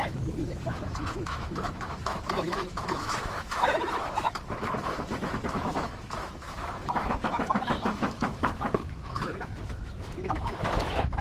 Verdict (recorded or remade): remade